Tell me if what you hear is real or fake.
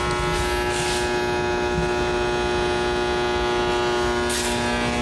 real